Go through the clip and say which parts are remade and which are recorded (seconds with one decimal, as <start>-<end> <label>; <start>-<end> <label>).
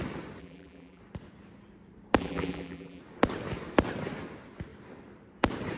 0.0-0.4 recorded; 0.4-1.0 remade; 1.0-2.2 recorded; 2.2-3.0 remade; 3.0-5.8 recorded